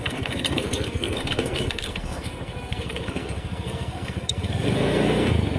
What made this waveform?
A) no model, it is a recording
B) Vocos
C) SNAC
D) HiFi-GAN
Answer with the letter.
C